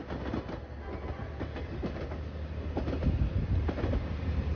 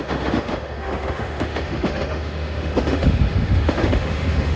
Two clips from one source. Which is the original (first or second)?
first